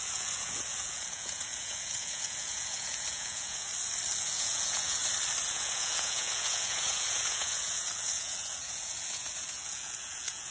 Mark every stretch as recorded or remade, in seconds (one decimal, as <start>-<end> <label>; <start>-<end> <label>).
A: 0.0-3.7 remade; 3.7-4.2 recorded; 4.2-5.0 remade; 5.0-5.5 recorded; 5.5-10.5 remade